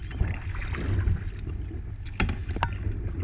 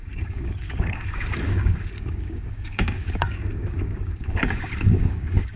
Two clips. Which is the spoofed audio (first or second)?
second